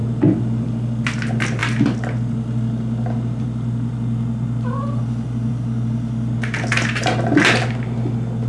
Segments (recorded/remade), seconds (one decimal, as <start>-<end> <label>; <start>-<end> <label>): 0.0-8.5 recorded